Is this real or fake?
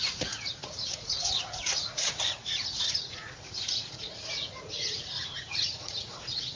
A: fake